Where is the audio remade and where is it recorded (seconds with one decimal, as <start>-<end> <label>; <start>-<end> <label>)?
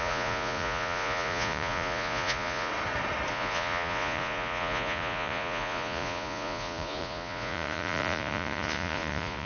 0.0-2.7 remade; 2.7-3.3 recorded; 3.3-9.5 remade